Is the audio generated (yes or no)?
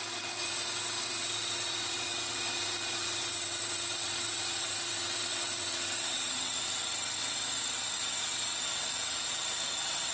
yes